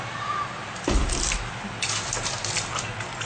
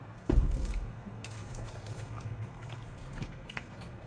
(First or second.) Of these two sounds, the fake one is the second